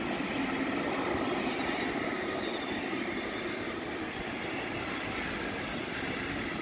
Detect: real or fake real